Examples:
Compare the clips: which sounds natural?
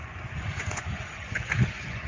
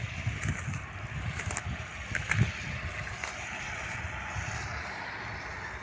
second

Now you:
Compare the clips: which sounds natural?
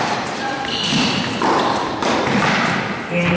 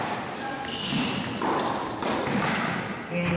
second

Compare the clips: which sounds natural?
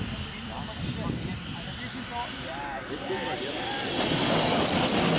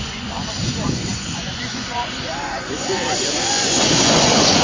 first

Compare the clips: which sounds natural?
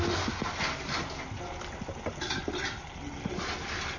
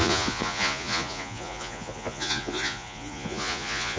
first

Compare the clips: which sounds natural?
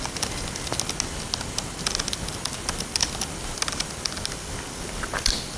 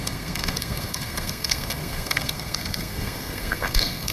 first